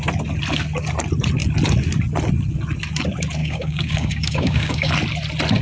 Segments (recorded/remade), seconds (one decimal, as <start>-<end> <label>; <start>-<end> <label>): 0.0-3.4 recorded; 3.4-4.9 remade; 4.9-5.6 recorded